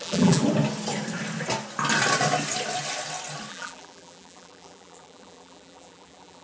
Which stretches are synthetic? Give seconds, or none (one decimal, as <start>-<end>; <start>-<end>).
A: 0.0-0.4; 3.5-6.4